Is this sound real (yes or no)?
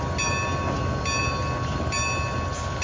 yes